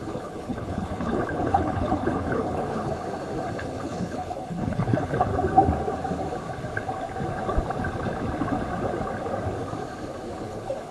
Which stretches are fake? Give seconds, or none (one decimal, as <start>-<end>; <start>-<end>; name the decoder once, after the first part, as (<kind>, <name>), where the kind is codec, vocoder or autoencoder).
0.0-2.9 (codec, HILCodec); 3.6-5.3; 10.4-10.9